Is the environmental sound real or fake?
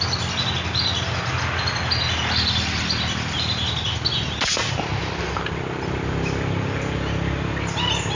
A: real